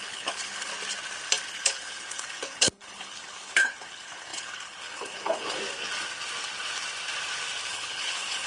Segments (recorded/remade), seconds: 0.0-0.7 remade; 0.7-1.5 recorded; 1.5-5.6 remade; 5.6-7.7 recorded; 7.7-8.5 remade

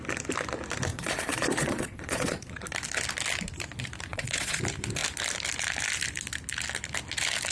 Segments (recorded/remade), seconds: 0.0-0.9 recorded; 0.9-2.5 remade; 2.5-4.1 recorded; 4.1-4.6 remade; 4.6-7.5 recorded

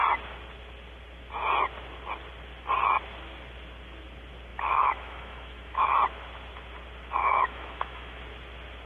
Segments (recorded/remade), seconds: 0.0-4.5 recorded; 4.5-5.9 remade; 5.9-7.2 recorded; 7.2-8.2 remade; 8.2-8.9 recorded

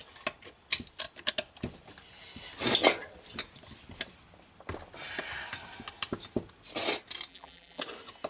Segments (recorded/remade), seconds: 0.0-7.3 recorded; 7.3-7.8 remade; 7.8-8.3 recorded

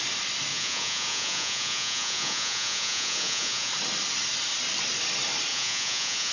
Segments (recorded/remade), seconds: 0.0-0.5 recorded; 0.5-3.7 remade; 3.7-5.5 recorded; 5.5-6.3 remade

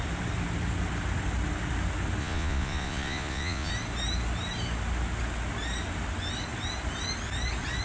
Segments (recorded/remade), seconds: 0.0-2.2 recorded; 2.2-3.7 remade; 3.7-7.8 recorded

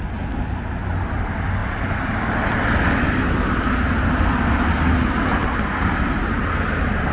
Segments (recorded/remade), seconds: 0.0-7.1 recorded